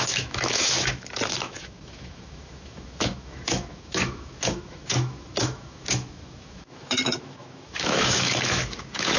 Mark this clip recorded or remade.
remade